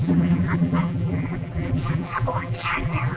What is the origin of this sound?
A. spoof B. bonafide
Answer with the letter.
A